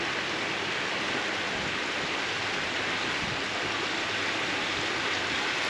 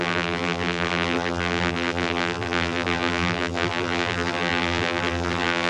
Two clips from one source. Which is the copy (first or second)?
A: second